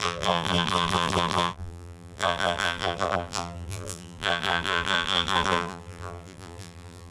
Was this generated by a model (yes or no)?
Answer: yes